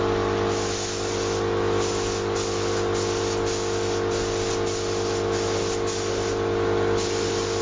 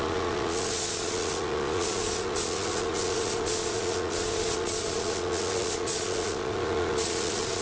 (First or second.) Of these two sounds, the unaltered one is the first